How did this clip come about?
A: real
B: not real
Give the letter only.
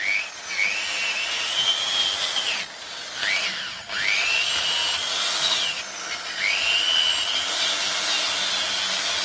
A